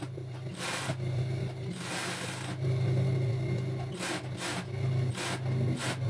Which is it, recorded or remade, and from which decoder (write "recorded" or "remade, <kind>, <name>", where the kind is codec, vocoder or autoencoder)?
recorded